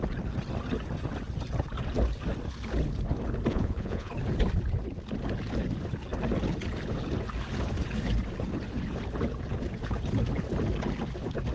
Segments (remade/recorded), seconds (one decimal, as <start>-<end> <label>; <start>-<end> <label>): 0.0-3.5 recorded; 3.5-4.1 remade; 4.1-11.5 recorded